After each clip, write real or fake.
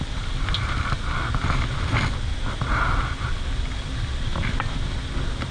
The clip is real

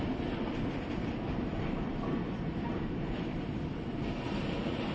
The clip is fake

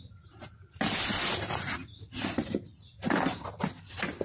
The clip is real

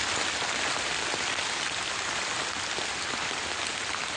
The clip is real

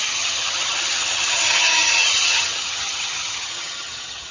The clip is fake